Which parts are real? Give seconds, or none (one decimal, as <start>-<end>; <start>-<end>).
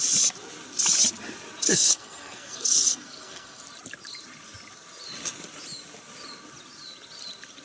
0.0-1.7; 3.6-7.6